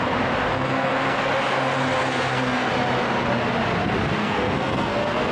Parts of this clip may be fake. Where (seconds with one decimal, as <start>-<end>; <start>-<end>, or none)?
0.5-1.3; 2.0-2.7; 4.2-5.3